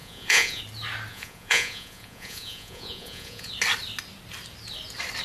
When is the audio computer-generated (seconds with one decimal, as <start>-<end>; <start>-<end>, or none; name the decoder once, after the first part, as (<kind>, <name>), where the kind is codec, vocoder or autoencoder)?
0.0-0.6 (vocoder, Vocos); 1.1-3.5